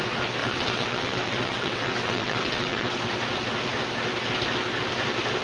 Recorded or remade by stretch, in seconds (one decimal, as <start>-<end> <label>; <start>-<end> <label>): 0.0-0.4 recorded; 0.4-3.0 remade; 3.0-5.4 recorded